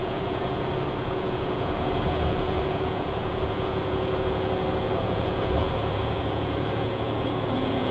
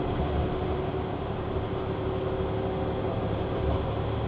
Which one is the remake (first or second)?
first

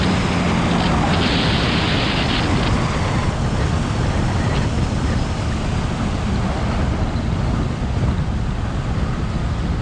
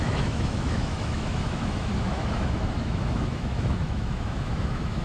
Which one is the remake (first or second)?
second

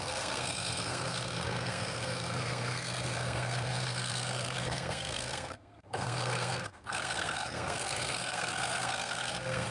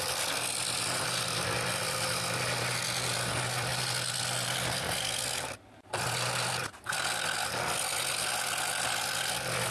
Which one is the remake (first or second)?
first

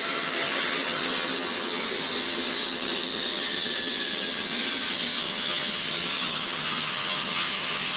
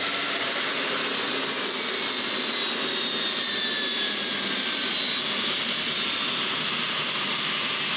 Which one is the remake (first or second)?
first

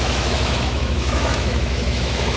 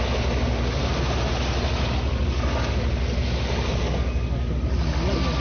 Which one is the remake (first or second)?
first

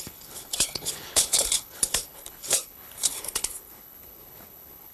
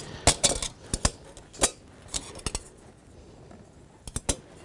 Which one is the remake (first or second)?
first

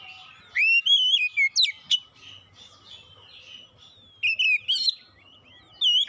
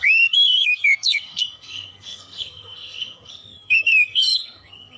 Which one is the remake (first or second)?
second